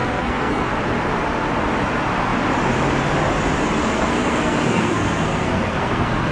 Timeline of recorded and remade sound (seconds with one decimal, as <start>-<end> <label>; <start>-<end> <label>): 0.0-0.7 remade; 0.7-3.8 recorded; 3.8-6.3 remade